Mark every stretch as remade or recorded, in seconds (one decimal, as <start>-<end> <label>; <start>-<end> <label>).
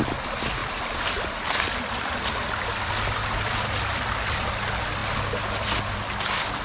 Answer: 0.0-6.6 recorded